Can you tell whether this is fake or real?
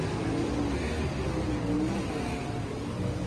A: real